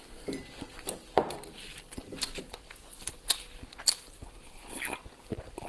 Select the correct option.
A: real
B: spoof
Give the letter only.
A